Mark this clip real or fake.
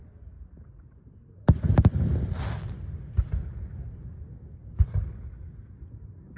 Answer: real